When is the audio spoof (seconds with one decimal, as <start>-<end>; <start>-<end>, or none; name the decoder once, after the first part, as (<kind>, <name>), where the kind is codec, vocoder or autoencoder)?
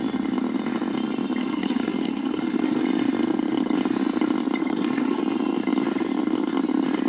1.4-2.8 (codec, SNAC); 4.6-5.2